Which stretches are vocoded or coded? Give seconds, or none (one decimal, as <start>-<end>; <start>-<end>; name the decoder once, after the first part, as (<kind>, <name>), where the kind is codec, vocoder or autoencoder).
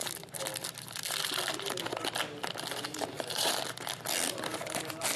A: 2.9-3.6 (vocoder, BigVGAN v2)